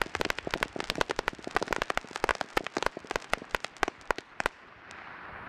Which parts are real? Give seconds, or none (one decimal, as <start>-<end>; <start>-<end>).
0.0-5.5